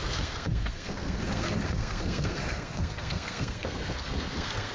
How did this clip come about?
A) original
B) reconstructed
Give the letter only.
B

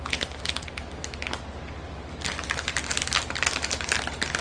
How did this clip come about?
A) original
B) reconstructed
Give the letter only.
A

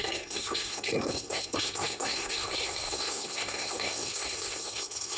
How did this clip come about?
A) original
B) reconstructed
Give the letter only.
B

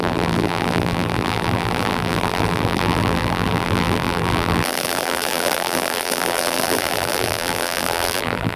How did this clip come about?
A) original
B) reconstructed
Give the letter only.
B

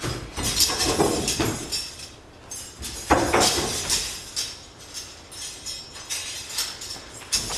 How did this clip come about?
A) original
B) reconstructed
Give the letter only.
A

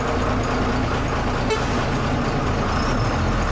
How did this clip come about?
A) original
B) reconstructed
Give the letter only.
A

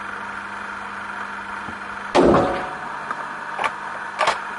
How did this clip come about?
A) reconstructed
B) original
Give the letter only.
B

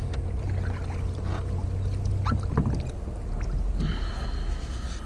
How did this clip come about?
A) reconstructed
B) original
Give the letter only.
B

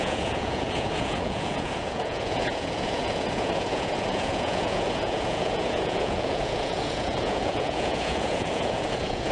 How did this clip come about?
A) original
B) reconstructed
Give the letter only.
B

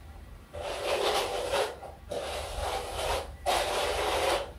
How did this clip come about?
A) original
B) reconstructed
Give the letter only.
B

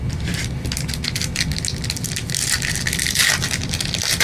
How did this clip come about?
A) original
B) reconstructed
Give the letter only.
A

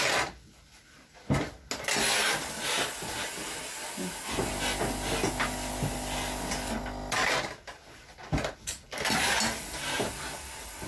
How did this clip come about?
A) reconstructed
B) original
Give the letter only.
B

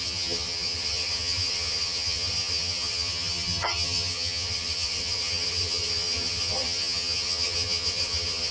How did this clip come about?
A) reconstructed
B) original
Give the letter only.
A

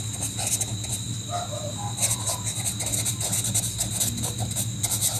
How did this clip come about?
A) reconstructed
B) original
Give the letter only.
B